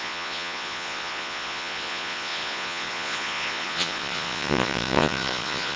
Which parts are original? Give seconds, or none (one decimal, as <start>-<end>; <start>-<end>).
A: none